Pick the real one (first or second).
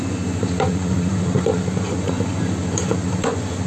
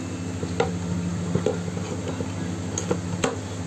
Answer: second